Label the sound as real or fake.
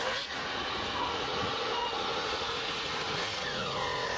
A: fake